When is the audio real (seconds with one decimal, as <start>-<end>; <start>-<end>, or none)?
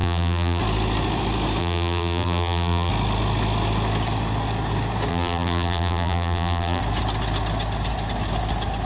0.6-1.6; 2.9-5.1; 6.8-8.8